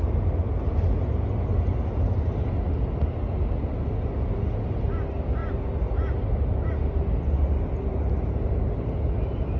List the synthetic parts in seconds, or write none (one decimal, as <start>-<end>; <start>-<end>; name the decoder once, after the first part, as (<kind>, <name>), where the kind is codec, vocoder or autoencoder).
none